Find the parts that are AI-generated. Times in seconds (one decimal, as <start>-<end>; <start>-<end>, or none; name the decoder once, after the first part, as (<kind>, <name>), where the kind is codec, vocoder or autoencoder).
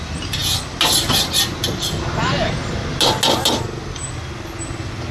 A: none